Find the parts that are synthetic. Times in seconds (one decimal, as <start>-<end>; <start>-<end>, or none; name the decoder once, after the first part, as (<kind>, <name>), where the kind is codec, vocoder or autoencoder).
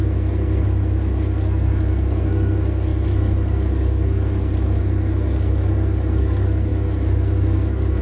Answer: 0.0-8.0 (codec, SNAC)